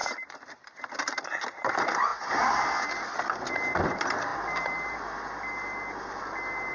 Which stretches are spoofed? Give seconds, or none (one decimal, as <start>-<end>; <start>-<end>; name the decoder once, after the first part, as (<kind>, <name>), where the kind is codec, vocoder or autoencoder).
none